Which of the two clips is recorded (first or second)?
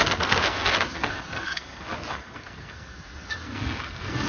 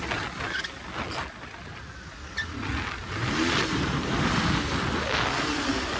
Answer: second